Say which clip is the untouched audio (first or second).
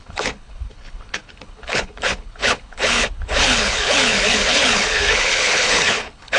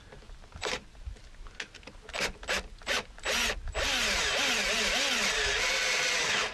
second